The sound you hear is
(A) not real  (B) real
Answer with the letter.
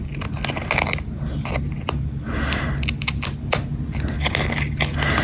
B